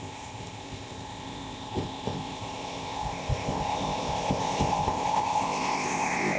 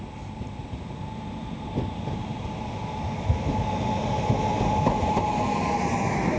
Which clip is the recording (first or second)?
second